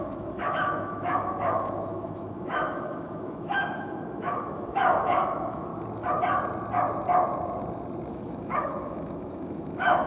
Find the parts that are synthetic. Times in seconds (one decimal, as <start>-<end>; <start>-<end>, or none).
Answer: 0.0-5.7; 8.1-10.1